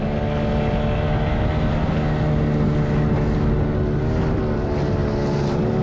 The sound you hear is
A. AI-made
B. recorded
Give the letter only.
B